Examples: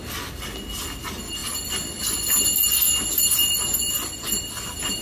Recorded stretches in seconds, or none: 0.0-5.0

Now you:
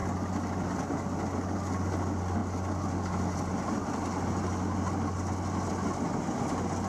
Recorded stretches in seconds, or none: 0.0-6.9

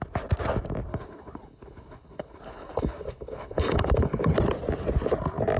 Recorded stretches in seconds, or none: 0.0-0.9; 4.3-5.6

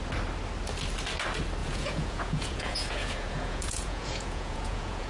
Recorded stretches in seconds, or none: 0.0-1.6